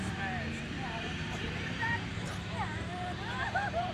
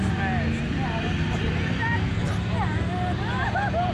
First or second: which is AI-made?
first